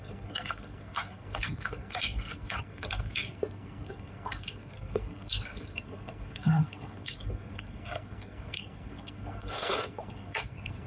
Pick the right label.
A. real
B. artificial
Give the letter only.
B